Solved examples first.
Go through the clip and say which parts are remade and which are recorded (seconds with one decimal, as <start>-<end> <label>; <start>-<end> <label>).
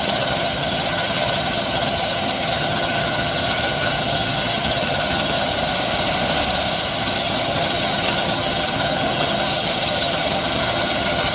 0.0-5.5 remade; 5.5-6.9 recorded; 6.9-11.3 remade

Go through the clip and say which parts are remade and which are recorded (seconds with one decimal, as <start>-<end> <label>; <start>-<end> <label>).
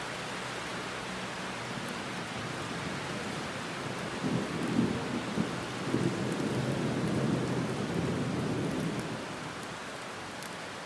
0.0-10.9 recorded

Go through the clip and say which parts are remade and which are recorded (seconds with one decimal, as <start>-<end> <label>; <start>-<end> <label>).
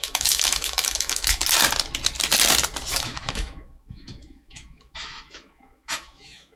0.0-1.4 remade; 1.4-2.9 recorded; 2.9-6.6 remade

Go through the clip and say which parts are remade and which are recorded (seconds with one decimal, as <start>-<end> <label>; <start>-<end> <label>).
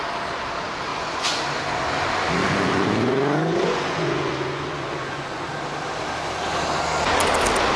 0.0-0.9 recorded; 0.9-1.4 remade; 1.4-2.4 recorded; 2.4-5.5 remade; 5.5-7.8 recorded